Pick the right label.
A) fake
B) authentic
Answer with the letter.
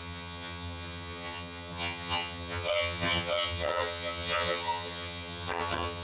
A